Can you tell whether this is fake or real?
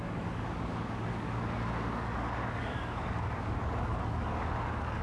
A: fake